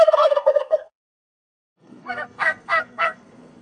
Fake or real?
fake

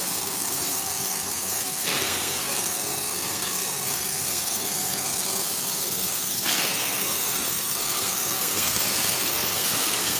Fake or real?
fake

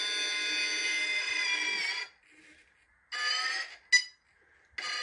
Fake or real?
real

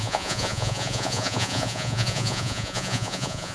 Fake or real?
fake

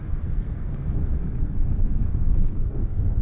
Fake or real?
fake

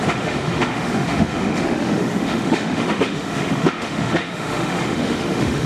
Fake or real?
fake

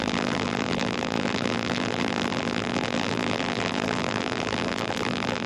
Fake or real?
fake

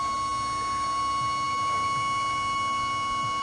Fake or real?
real